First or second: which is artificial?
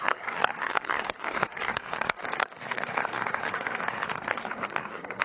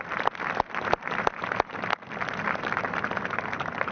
first